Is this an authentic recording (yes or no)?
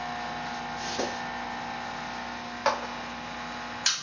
yes